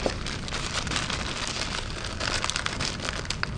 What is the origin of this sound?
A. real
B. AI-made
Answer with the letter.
A